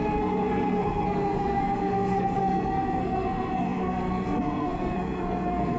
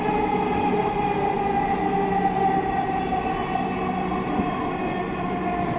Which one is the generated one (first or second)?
first